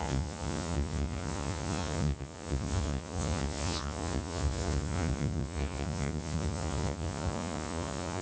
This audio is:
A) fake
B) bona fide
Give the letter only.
A